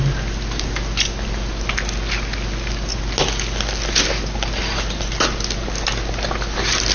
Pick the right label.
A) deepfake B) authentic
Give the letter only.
B